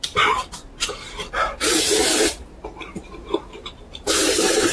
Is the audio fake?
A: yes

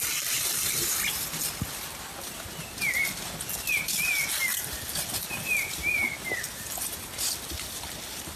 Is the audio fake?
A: no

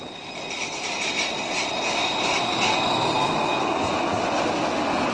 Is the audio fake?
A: no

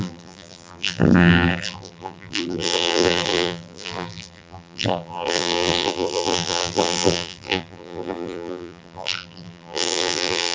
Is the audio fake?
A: yes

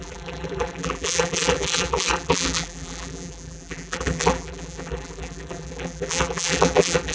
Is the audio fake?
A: yes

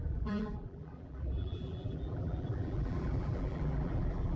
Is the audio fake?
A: yes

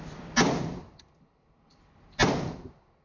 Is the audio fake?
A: no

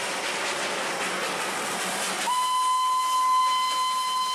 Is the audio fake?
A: no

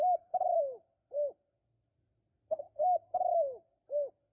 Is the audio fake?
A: no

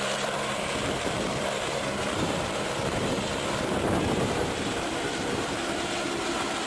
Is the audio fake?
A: yes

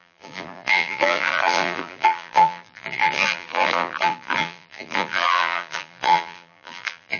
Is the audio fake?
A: yes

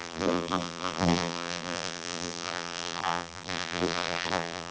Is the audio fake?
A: yes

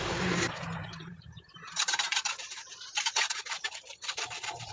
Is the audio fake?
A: yes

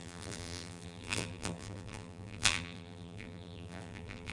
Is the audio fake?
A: yes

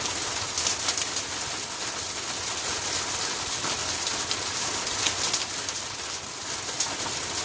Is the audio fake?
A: no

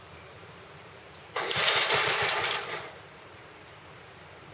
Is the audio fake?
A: yes